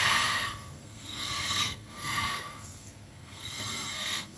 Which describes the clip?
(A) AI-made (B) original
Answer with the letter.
A